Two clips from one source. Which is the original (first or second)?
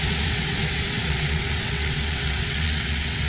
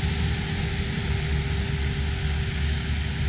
second